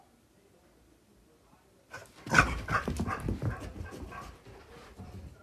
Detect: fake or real real